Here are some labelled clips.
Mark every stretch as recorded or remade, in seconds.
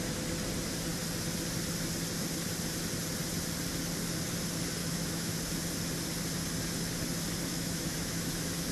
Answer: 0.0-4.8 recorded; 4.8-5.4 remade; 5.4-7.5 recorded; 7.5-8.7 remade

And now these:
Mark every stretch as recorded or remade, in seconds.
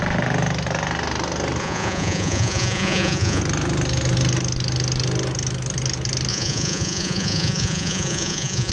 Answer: 0.0-1.6 recorded; 1.6-3.4 remade; 3.4-6.3 recorded; 6.3-8.7 remade